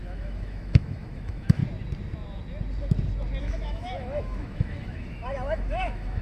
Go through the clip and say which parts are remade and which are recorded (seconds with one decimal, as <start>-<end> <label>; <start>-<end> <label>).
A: 0.0-1.6 remade; 1.6-3.4 recorded; 3.4-6.2 remade